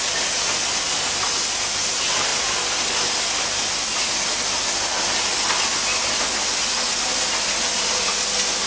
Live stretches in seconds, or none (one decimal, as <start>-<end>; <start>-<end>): 0.0-8.7